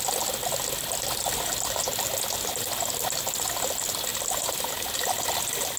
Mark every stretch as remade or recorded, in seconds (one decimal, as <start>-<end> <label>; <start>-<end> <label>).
0.0-4.1 recorded; 4.1-4.9 remade; 4.9-5.8 recorded